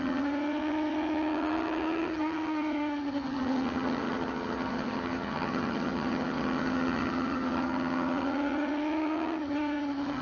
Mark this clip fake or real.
fake